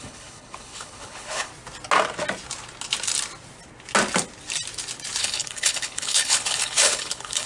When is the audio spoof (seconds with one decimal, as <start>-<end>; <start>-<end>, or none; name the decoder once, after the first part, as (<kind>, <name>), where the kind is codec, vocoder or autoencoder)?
0.0-1.5 (codec, HILCodec); 5.2-7.5